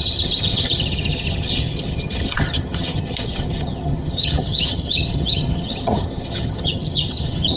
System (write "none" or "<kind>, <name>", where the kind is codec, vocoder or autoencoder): vocoder, HiFi-GAN